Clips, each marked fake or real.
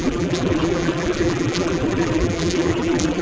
fake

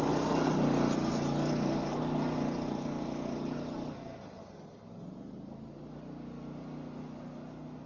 real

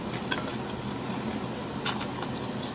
real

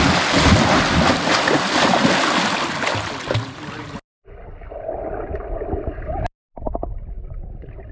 real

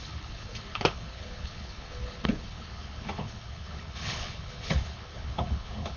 fake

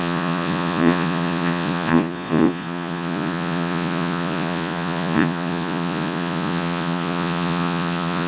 fake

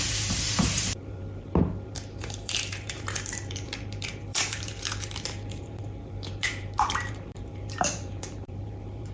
fake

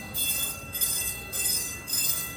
fake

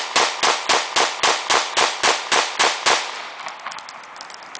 real